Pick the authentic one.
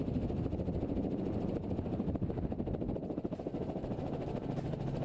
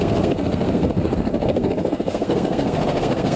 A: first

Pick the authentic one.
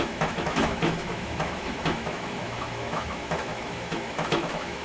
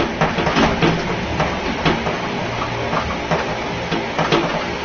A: second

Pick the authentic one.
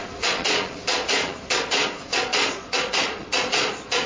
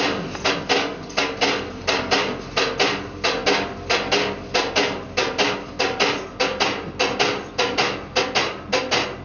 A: second